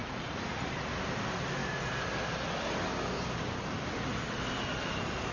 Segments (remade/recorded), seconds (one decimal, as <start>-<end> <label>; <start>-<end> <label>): 0.0-0.7 remade; 0.7-5.3 recorded